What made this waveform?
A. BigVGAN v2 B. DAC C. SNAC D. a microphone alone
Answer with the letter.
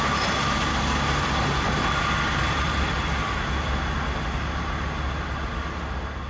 D